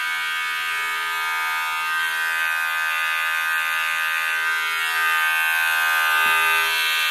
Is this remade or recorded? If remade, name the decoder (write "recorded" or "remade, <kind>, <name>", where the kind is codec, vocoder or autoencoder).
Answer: recorded